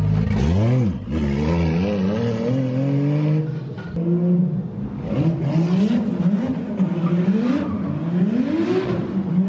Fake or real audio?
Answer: real